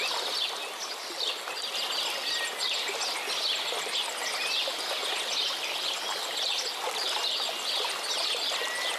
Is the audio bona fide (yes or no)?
yes